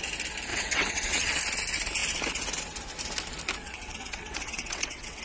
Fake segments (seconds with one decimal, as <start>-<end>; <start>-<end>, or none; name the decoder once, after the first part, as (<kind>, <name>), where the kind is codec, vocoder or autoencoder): 0.5-1.4 (vocoder, WaveNeXt); 3.6-5.2